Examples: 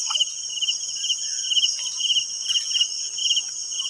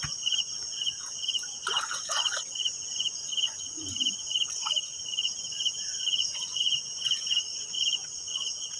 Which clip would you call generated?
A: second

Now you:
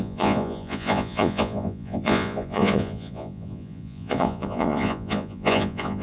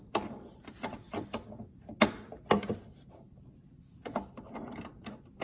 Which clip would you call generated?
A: first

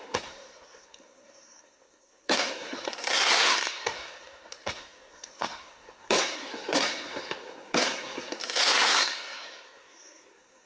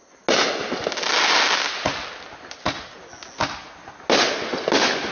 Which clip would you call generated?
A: first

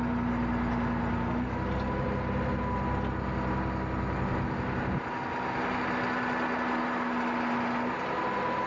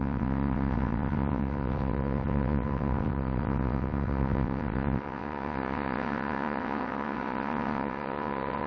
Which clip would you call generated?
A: second